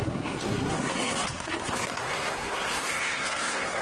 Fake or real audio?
fake